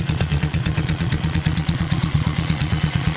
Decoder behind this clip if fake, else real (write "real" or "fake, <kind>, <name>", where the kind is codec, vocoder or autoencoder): fake, vocoder, Vocos